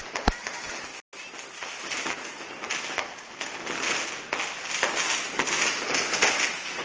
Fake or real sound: real